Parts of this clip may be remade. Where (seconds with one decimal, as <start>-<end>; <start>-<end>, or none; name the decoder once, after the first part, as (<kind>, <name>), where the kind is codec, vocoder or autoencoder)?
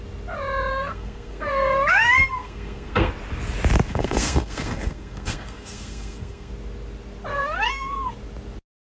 0.7-3.1 (codec, SNAC); 3.9-6.5; 7.3-8.1